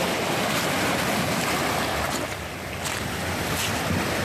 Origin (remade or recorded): recorded